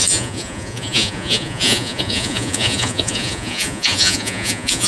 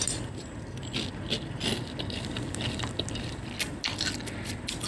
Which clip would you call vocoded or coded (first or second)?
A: first